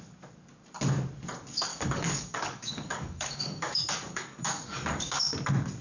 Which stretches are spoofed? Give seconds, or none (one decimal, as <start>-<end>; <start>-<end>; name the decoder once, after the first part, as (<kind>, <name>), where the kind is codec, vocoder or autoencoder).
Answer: 1.7-5.2 (codec, DAC)